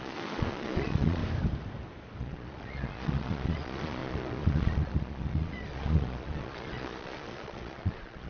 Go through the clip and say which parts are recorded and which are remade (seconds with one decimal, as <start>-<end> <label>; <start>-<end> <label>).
0.0-1.2 remade; 1.2-2.2 recorded; 2.2-8.3 remade